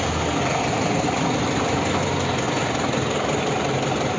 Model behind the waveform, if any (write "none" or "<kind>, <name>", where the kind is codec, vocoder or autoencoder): none